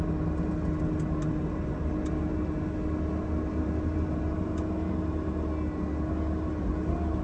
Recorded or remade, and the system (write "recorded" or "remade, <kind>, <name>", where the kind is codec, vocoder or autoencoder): recorded